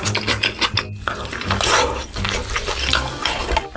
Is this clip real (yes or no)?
yes